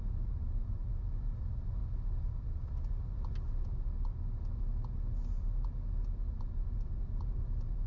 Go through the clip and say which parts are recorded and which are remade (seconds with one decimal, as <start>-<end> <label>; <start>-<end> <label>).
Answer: 0.0-7.9 recorded